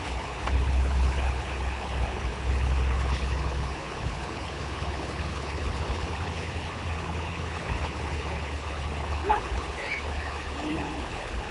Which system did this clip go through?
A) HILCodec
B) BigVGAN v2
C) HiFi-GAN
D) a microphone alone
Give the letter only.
A